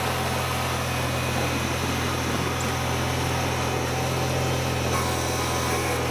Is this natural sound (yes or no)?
yes